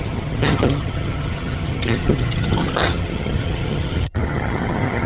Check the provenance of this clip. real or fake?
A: fake